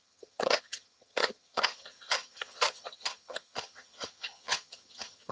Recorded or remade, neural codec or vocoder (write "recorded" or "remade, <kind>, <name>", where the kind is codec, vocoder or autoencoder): remade, vocoder, HiFi-GAN